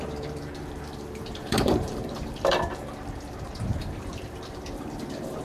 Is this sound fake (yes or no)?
yes